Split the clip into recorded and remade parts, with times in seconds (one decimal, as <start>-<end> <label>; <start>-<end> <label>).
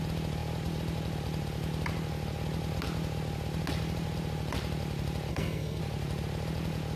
0.0-5.3 recorded; 5.3-5.8 remade; 5.8-7.0 recorded